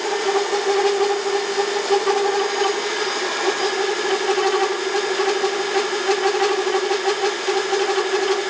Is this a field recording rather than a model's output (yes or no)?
yes